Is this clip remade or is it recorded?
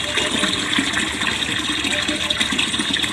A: recorded